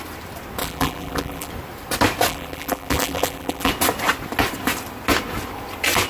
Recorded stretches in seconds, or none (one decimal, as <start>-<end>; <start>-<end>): 0.0-0.6; 1.5-2.3; 3.7-6.1